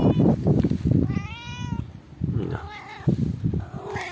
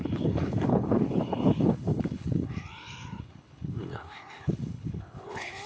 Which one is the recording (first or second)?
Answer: first